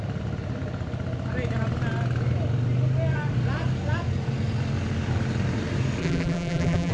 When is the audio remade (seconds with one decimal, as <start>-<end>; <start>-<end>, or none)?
6.0-6.9